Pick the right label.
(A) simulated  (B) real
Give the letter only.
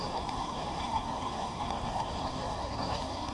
A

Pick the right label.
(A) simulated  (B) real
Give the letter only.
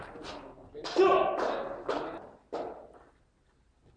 B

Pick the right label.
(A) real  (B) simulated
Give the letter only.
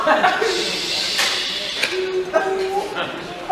A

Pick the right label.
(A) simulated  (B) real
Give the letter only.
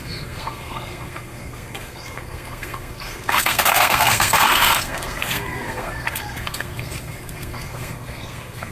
A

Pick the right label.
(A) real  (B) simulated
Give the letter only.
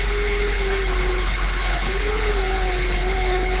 B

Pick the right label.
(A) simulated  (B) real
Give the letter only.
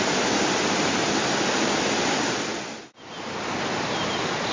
B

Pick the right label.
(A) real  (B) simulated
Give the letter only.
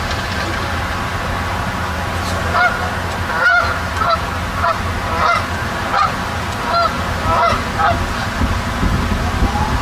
A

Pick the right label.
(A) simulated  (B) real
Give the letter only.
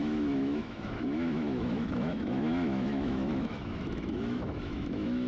A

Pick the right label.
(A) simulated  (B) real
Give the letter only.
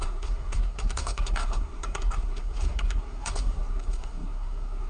A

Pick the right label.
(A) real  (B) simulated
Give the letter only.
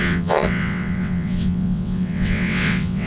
B